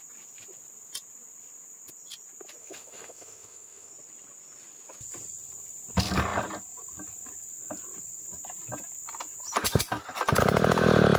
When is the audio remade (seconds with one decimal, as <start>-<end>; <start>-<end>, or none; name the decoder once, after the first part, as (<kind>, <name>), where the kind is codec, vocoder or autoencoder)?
2.6-3.9 (autoencoder, DAC-VAE)

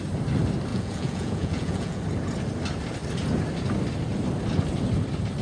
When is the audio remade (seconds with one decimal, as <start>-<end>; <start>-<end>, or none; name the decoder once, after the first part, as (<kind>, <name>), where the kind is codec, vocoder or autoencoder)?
0.7-2.0 (vocoder, Vocos)

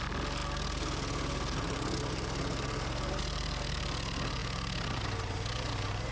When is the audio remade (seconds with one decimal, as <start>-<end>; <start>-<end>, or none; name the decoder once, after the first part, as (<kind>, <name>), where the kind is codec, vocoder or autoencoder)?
none

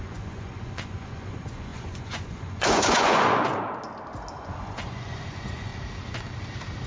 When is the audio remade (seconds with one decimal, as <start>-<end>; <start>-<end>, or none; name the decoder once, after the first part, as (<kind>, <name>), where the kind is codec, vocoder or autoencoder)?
0.0-3.5 (vocoder, Vocos); 4.3-5.7

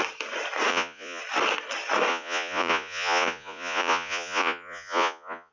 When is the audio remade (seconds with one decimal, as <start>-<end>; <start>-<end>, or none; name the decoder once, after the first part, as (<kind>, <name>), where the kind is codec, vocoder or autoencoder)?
0.7-1.2 (vocoder, Vocos); 2.1-5.5

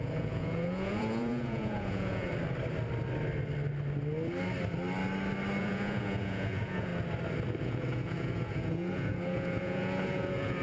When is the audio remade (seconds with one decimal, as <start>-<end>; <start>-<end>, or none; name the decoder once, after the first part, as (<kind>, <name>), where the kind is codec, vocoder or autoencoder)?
0.0-2.3 (vocoder, Vocos); 5.6-6.9; 7.6-10.6

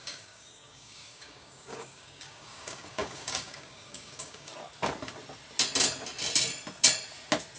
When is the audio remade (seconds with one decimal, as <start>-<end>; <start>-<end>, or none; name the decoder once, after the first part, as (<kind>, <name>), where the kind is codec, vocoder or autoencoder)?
0.0-4.5 (codec, DAC)